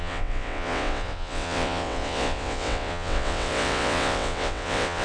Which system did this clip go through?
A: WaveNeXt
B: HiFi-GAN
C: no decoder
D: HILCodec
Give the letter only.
A